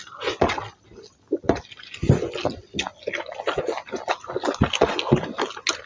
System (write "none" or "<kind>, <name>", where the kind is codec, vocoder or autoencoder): none